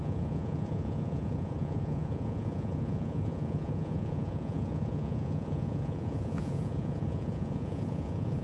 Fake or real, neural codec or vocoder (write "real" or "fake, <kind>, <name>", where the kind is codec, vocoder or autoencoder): fake, vocoder, Vocos